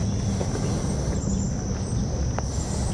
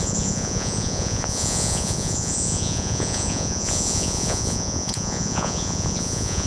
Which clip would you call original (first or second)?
first